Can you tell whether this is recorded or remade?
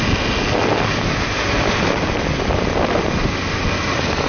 recorded